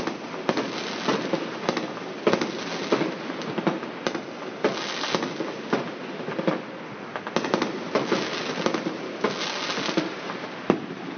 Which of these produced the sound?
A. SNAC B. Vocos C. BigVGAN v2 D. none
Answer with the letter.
D